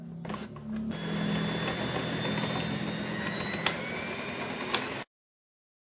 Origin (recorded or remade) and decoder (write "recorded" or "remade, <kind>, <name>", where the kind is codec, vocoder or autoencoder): recorded